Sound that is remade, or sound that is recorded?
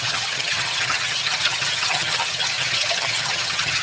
remade